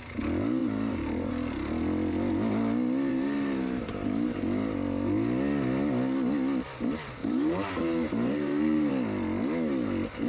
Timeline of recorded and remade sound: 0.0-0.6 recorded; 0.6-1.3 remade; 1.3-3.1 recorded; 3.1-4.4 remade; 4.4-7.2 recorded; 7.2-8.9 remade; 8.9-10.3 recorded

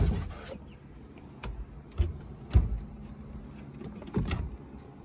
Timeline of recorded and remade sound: 0.0-5.0 recorded

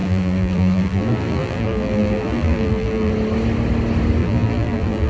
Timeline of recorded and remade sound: 0.0-3.1 remade; 3.1-4.2 recorded; 4.2-5.1 remade

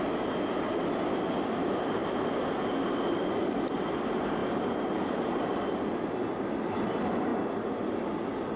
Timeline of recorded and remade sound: 0.0-4.4 recorded; 4.4-5.7 remade; 5.7-8.6 recorded